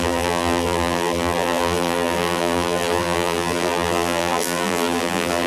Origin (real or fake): fake